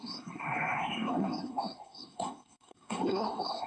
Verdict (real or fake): fake